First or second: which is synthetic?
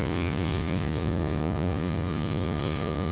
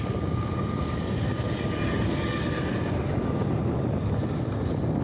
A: first